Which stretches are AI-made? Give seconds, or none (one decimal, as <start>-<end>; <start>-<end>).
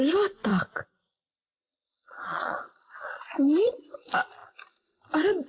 0.5-3.8